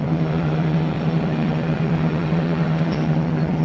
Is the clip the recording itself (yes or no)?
no